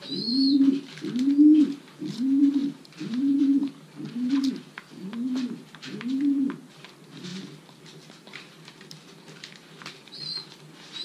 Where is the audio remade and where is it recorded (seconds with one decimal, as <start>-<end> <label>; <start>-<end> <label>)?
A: 0.0-2.6 recorded; 2.6-4.6 remade; 4.6-11.0 recorded